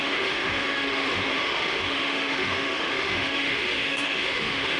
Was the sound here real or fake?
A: fake